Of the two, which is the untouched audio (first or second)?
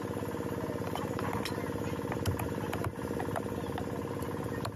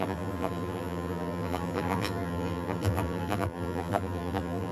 first